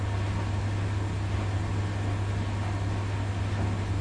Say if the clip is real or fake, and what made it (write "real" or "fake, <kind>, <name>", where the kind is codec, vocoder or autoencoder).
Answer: real